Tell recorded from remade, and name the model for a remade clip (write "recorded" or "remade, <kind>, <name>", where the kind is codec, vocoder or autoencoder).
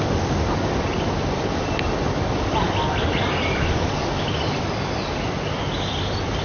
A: recorded